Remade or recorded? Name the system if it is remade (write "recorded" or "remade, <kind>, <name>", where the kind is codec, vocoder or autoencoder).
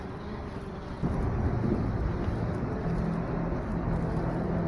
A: recorded